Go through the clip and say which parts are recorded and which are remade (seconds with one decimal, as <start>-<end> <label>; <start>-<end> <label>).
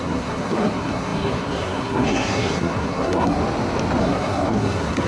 0.0-3.4 remade; 3.4-4.0 recorded; 4.0-5.1 remade